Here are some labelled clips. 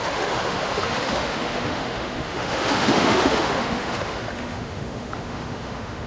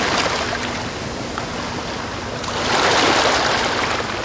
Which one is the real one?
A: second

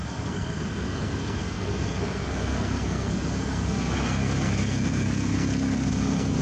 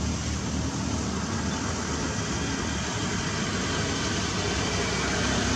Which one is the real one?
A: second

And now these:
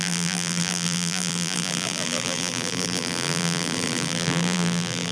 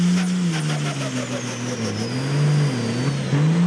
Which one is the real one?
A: second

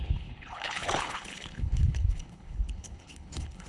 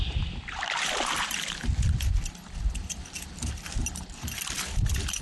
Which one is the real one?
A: second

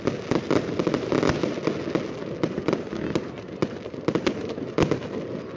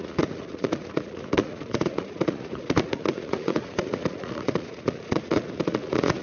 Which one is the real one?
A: first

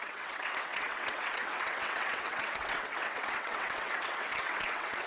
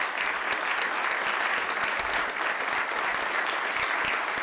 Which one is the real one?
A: second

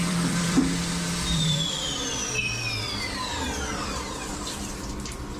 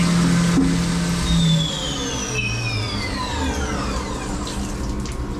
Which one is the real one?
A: second